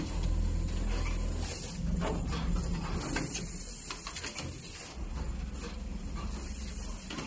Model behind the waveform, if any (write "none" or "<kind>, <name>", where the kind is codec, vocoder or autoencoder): none